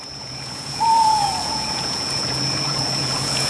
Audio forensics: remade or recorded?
remade